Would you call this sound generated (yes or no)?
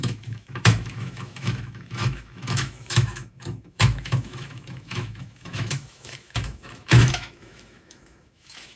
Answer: yes